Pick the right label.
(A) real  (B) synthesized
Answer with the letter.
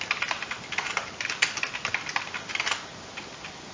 A